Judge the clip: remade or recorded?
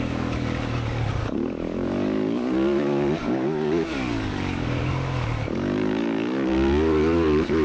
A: remade